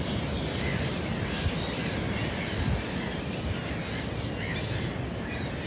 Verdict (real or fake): real